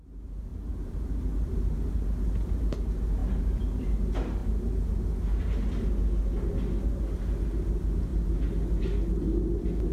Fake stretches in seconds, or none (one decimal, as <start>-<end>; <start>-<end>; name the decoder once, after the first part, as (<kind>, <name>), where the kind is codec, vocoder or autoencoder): none

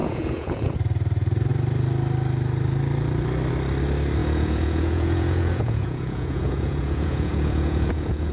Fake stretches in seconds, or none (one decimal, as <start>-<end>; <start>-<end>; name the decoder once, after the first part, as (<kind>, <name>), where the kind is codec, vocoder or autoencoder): 0.0-0.7 (vocoder, Vocos); 4.2-8.3

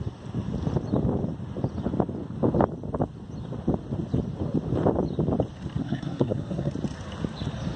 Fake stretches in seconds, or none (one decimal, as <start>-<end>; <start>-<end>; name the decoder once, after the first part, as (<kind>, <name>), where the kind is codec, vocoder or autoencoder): 5.8-6.7 (codec, SNAC)

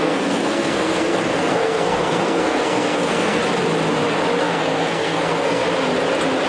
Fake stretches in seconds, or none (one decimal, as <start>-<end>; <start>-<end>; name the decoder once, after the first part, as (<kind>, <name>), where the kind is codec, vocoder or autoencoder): 0.0-3.4 (codec, SNAC); 4.4-5.6

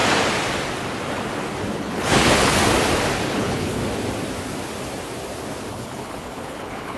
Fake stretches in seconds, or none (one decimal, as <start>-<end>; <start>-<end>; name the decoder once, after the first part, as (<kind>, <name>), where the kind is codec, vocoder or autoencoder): 1.7-2.6 (codec, HILCodec); 3.3-3.8; 5.7-7.0

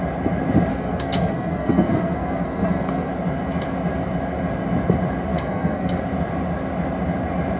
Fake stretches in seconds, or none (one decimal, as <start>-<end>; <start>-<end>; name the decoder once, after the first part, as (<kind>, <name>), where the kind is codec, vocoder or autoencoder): 0.7-3.1 (codec, SNAC); 5.3-6.0

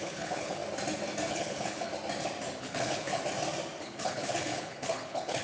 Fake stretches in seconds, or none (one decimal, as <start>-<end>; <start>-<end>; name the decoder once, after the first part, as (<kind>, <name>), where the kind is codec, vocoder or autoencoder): 0.0-0.6 (codec, HILCodec); 1.3-1.9; 2.6-3.2; 3.8-5.4